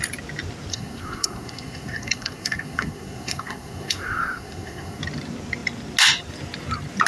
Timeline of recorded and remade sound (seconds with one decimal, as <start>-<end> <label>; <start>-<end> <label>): 0.0-0.7 recorded; 0.7-5.0 remade; 5.0-7.1 recorded